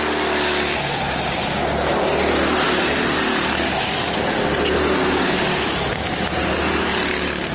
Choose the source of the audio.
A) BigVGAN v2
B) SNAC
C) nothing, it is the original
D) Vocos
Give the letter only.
C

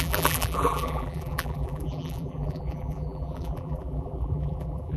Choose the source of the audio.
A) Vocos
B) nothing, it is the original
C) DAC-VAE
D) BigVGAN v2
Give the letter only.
D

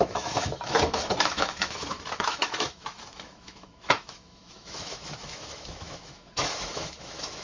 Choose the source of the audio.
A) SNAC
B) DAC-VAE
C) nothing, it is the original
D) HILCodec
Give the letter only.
B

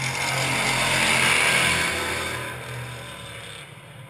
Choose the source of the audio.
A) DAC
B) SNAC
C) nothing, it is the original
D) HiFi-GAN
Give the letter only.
C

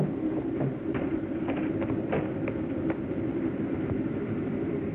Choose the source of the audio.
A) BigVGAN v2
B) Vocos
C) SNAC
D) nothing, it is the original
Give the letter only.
A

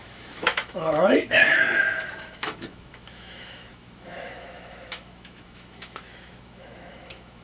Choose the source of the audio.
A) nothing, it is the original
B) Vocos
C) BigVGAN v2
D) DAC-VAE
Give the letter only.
D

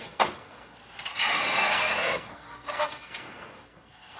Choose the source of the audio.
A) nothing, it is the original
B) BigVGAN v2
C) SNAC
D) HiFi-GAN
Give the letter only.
C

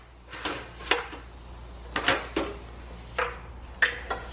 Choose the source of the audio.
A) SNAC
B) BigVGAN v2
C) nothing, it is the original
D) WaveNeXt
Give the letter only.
C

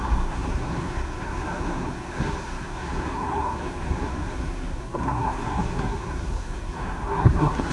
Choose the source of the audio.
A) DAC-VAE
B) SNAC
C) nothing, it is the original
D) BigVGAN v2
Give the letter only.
B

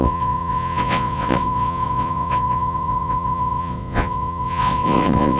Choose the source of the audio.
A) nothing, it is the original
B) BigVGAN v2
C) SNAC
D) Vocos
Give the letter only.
D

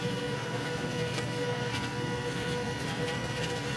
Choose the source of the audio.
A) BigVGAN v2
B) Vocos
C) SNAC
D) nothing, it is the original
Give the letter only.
C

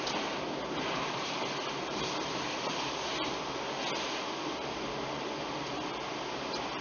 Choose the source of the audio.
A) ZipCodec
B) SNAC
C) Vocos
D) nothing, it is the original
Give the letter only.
D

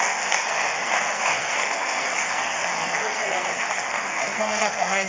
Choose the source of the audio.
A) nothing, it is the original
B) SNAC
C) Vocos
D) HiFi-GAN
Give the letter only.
B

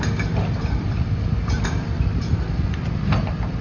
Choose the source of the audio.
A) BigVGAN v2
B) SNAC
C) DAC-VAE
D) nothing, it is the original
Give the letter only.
A